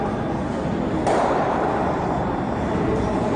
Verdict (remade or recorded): recorded